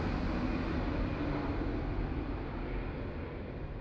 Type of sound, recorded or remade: recorded